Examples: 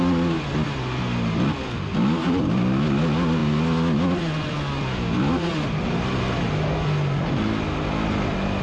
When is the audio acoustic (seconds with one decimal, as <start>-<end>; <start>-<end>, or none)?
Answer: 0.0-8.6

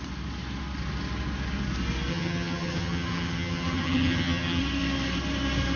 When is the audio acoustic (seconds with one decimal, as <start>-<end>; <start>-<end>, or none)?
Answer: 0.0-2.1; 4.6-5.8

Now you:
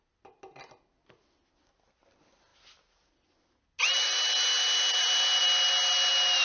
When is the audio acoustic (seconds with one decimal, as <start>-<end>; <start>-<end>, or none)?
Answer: 0.0-6.4